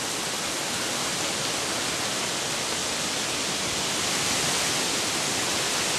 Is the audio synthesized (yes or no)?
no